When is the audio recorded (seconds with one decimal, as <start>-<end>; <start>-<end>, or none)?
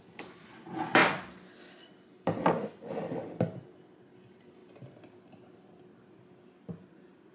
0.0-7.3